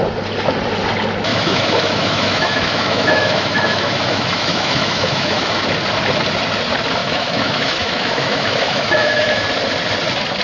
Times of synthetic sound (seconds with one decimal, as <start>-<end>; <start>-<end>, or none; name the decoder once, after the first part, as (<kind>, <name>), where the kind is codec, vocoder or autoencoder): 1.3-5.7 (autoencoder, DAC-VAE); 7.0-9.4